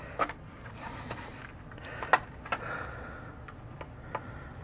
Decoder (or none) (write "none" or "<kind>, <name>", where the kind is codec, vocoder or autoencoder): none